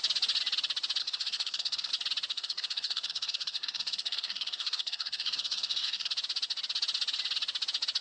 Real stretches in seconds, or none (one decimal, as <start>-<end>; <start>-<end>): 0.0-1.0; 1.9-2.3; 6.1-8.0